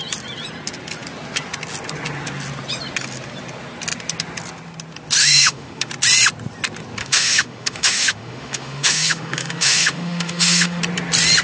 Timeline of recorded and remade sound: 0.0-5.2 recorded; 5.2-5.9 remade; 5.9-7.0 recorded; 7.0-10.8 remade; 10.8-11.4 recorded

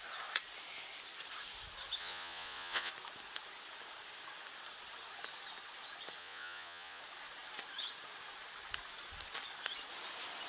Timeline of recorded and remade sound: 0.0-2.0 recorded; 2.0-2.9 remade; 2.9-6.2 recorded; 6.2-7.0 remade; 7.0-10.5 recorded

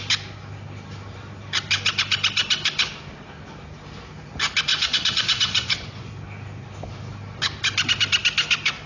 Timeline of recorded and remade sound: 0.0-4.7 recorded; 4.7-6.1 remade; 6.1-8.9 recorded

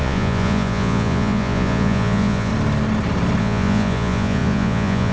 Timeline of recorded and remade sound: 0.0-2.5 remade; 2.5-3.4 recorded; 3.4-5.1 remade

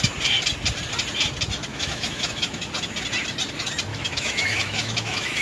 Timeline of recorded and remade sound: 0.0-1.7 recorded; 1.7-2.7 remade; 2.7-3.9 recorded; 3.9-5.4 remade

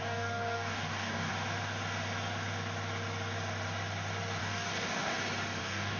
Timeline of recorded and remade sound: 0.0-1.3 remade; 1.3-4.4 recorded; 4.4-5.1 remade; 5.1-5.6 recorded; 5.6-6.0 remade